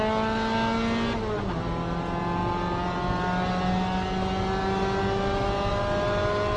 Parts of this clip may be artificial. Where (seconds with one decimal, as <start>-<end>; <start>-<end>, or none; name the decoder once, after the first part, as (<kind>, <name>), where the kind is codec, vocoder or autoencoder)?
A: none